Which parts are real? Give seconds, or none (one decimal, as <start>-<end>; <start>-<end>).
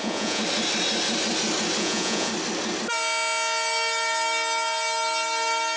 0.4-1.8; 2.3-5.8